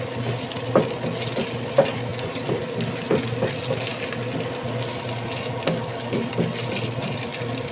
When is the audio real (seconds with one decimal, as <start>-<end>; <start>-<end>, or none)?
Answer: 0.0-7.7